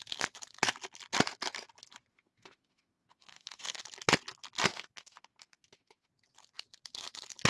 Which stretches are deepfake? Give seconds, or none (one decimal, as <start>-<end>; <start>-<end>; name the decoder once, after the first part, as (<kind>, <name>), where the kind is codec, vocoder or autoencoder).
2.1-3.8 (autoencoder, DAC-VAE); 4.7-6.1